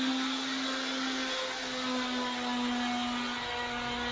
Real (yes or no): yes